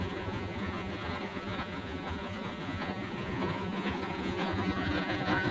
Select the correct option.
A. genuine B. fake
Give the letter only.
B